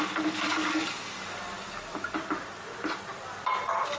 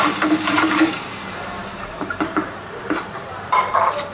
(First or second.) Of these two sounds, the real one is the first